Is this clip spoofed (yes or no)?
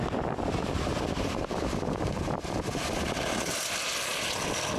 yes